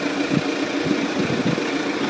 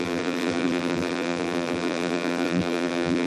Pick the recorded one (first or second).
first